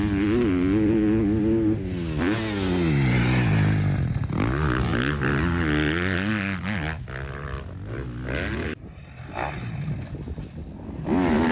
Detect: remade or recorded recorded